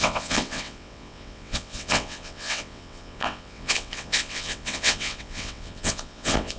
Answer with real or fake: fake